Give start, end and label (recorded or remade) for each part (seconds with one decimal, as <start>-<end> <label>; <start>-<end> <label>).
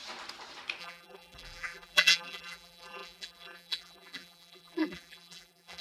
0.0-0.8 recorded; 0.8-5.8 remade